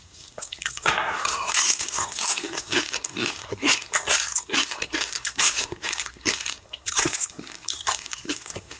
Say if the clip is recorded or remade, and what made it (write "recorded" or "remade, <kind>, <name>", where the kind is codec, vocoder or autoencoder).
remade, codec, SNAC